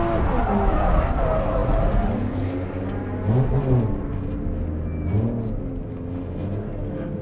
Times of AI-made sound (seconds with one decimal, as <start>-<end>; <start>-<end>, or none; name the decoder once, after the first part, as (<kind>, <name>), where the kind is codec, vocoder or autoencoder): none